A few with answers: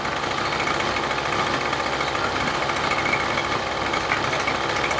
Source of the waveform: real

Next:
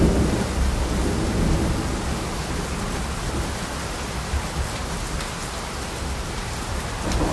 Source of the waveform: real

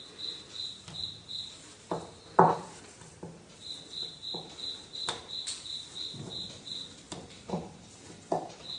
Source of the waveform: real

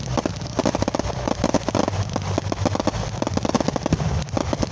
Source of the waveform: real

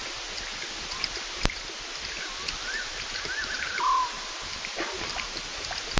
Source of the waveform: real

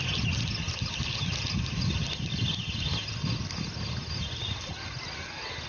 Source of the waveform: real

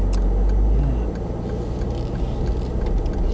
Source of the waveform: real